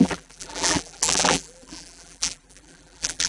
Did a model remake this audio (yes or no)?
yes